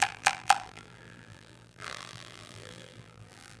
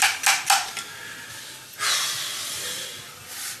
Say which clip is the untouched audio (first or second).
second